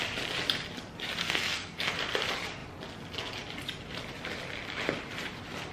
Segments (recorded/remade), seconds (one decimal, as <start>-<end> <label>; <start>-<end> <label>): 0.0-1.2 recorded; 1.2-1.9 remade; 1.9-5.7 recorded